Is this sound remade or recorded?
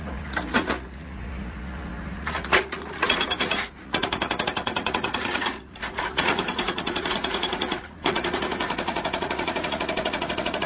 remade